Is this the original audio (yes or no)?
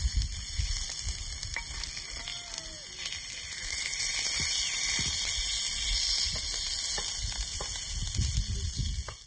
yes